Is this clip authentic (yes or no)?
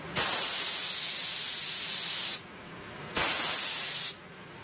yes